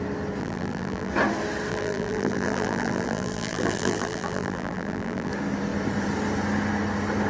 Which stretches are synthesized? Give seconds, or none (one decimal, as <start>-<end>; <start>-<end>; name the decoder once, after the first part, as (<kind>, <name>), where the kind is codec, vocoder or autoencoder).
0.4-1.1 (vocoder, BigVGAN v2); 1.7-5.3